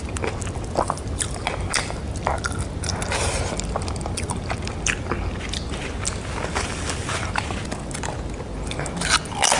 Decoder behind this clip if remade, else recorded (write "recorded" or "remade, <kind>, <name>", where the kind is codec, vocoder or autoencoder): recorded